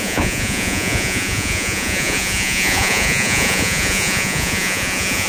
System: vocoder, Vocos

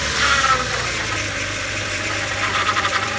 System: vocoder, BigVGAN v2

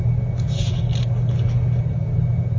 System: none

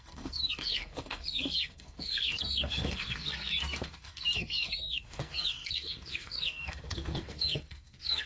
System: codec, SNAC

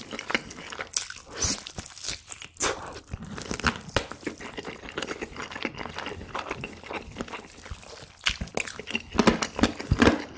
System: none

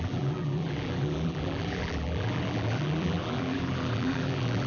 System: vocoder, BigVGAN v2